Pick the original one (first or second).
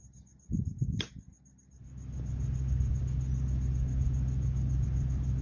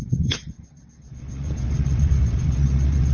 first